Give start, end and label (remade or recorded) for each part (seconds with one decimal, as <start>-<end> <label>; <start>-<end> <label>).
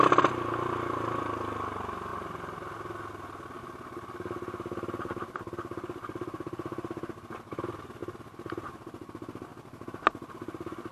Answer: 0.0-2.1 remade; 2.1-3.6 recorded; 3.6-8.0 remade; 8.0-9.1 recorded; 9.1-10.9 remade